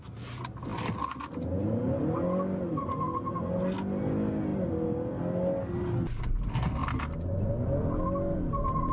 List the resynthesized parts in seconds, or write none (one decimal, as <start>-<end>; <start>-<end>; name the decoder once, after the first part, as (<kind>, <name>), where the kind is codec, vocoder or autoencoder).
none